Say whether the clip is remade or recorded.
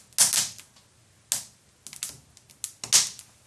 recorded